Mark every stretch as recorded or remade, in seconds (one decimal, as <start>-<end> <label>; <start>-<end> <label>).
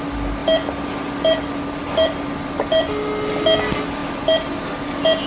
0.0-5.3 recorded